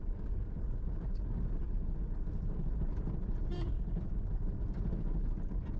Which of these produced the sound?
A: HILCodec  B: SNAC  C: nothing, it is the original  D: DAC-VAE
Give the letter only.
C